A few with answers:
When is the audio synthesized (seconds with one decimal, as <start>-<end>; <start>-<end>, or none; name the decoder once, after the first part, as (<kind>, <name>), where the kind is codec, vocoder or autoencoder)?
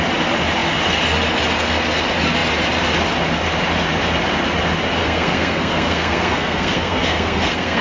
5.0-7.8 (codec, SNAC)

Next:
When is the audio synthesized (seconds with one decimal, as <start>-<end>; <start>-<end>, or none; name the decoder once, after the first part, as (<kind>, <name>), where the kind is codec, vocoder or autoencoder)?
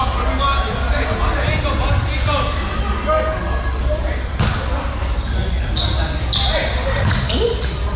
none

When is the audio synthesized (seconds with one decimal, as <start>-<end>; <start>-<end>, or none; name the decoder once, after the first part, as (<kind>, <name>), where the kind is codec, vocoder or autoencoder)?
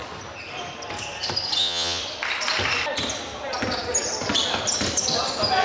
1.6-2.0 (vocoder, WaveNeXt)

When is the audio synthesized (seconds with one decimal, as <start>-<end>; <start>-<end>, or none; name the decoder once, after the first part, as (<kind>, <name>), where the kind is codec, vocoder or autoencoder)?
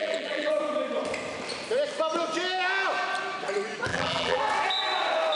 0.0-0.5 (vocoder, BigVGAN v2); 3.9-4.4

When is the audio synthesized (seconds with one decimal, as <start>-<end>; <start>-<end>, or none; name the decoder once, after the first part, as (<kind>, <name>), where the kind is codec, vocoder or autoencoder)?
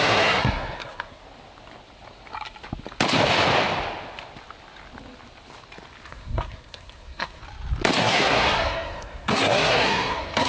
0.0-1.2 (codec, SNAC); 6.1-7.4; 8.0-10.5